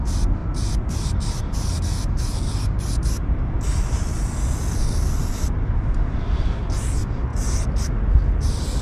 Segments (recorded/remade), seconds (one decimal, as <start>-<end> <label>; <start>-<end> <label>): 0.0-8.8 recorded